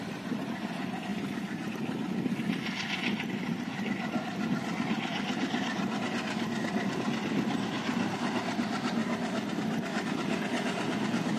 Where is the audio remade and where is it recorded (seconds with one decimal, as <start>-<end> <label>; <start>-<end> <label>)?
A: 0.0-11.4 recorded

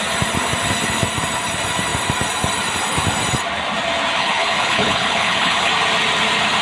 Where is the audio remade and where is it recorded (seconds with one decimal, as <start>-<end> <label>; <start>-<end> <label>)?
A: 0.0-4.2 recorded; 4.2-5.7 remade; 5.7-6.6 recorded

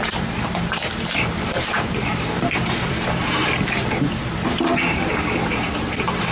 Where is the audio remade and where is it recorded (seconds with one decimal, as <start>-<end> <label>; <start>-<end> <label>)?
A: 0.0-6.3 remade

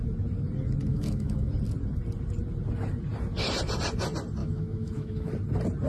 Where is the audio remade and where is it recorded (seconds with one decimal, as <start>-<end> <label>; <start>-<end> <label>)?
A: 0.0-0.9 recorded; 0.9-1.5 remade; 1.5-4.4 recorded; 4.4-5.3 remade; 5.3-5.9 recorded